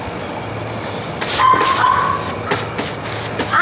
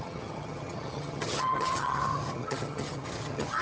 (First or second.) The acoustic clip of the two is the first